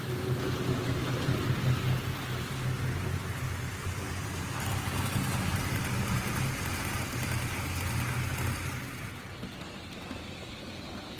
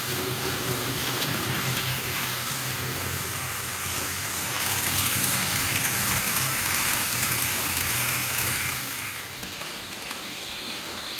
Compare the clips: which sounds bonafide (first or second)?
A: first